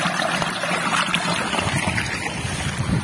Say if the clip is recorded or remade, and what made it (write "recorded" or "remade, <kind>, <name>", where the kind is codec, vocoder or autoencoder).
recorded